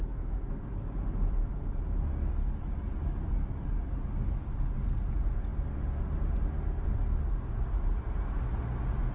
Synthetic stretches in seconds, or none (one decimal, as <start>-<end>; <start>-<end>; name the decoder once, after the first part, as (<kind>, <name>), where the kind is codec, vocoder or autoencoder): 0.0-0.8 (codec, SNAC)